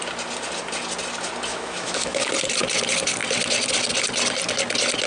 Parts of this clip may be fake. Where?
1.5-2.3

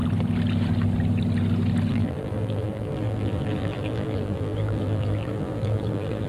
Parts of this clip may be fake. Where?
1.9-6.3